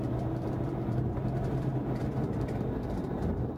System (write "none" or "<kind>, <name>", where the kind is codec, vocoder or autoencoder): vocoder, BigVGAN v2